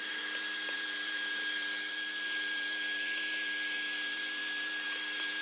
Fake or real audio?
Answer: fake